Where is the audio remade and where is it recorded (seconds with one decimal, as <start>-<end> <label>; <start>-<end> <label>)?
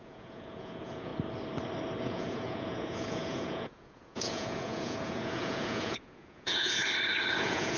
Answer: 0.0-1.1 remade; 1.1-2.0 recorded; 2.0-6.8 remade; 6.8-7.3 recorded; 7.3-7.8 remade